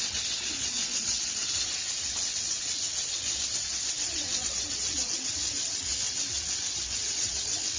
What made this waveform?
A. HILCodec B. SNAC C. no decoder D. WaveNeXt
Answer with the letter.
D